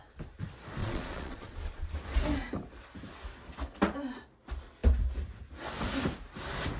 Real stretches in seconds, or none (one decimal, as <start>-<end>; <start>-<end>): 0.0-0.8; 2.0-6.8